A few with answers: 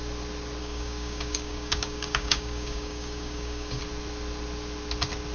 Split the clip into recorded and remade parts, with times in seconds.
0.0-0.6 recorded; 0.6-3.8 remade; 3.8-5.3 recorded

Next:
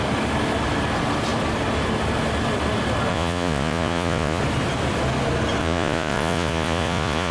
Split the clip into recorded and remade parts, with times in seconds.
0.0-3.1 recorded; 3.1-4.4 remade; 4.4-5.6 recorded; 5.6-7.3 remade

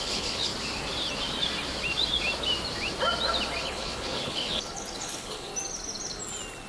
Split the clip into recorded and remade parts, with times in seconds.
0.0-0.5 remade; 0.5-3.6 recorded; 3.6-5.5 remade; 5.5-6.7 recorded

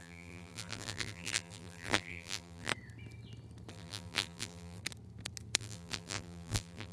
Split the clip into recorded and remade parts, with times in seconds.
0.0-2.7 remade; 2.7-3.7 recorded; 3.7-4.8 remade; 4.8-5.6 recorded; 5.6-6.9 remade

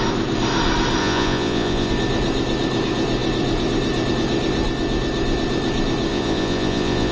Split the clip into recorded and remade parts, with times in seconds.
0.0-1.0 recorded; 1.0-1.9 remade; 1.9-6.1 recorded; 6.1-7.1 remade